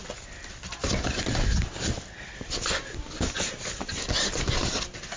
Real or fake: real